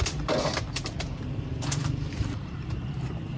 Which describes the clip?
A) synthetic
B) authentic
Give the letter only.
A